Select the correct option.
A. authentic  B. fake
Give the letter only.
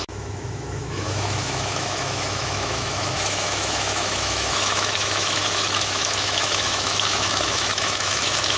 B